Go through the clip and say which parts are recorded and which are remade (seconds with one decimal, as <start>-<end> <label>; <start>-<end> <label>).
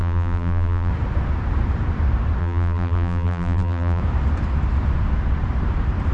0.0-0.9 remade; 0.9-2.4 recorded; 2.4-4.0 remade; 4.0-6.1 recorded